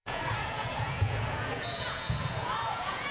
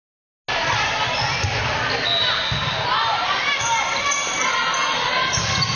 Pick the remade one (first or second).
first